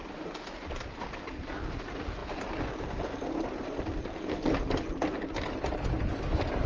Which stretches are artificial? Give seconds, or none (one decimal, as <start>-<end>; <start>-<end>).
0.0-0.9